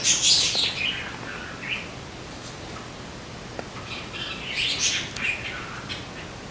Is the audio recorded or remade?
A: recorded